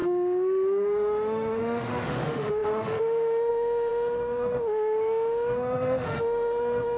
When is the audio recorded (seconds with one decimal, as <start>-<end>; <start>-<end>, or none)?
none